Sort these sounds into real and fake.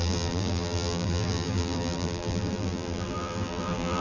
fake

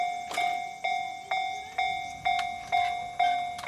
real